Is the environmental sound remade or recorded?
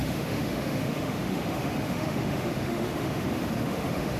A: remade